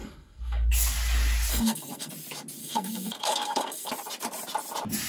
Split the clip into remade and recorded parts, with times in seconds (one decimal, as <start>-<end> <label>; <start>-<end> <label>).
0.0-0.7 remade; 0.7-1.5 recorded; 1.5-2.1 remade; 2.1-2.6 recorded; 2.6-3.9 remade; 3.9-5.1 recorded